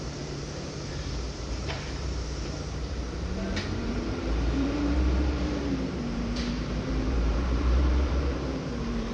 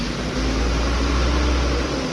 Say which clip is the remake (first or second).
first